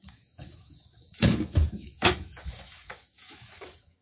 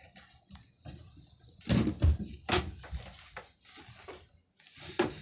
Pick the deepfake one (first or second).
first